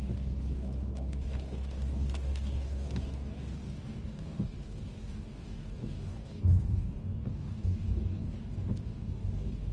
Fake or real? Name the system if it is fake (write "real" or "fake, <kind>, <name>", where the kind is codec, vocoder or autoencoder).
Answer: fake, codec, DAC